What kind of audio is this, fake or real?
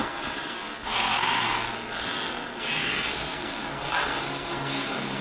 fake